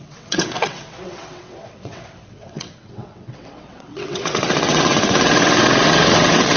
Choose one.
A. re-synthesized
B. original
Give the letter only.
A